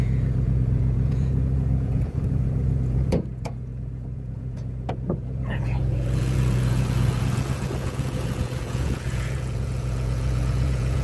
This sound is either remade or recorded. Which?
remade